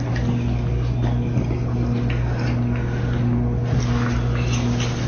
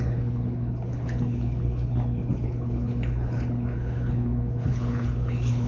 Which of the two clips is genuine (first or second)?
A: first